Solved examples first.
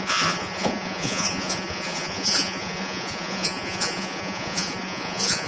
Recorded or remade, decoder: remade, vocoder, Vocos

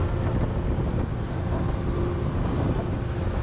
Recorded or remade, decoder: recorded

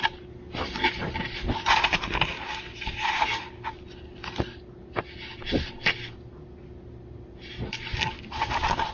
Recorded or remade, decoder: recorded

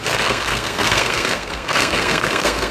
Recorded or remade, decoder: remade, codec, SNAC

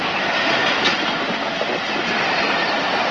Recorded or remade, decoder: recorded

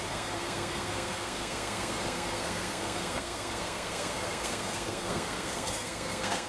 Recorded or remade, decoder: remade, codec, SNAC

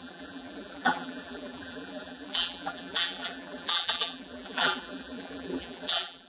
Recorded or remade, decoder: remade, vocoder, BigVGAN v2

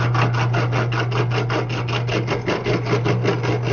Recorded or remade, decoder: recorded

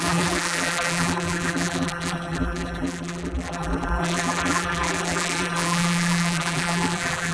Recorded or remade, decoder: remade, vocoder, BigVGAN v2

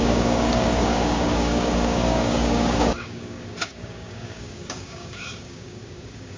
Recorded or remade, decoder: remade, codec, DAC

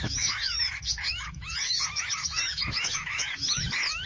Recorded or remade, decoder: remade, autoencoder, DAC-VAE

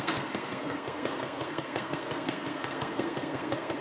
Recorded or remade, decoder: remade, codec, SNAC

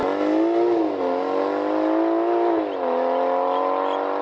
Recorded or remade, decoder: recorded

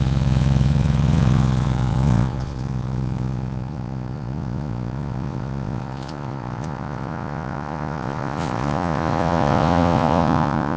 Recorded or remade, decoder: remade, vocoder, Vocos